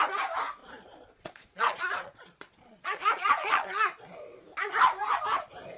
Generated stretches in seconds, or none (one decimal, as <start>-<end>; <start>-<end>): 0.6-4.1